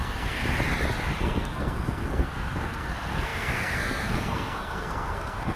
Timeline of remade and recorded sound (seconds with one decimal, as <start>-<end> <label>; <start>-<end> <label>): 0.0-0.4 remade; 0.4-1.2 recorded; 1.2-5.6 remade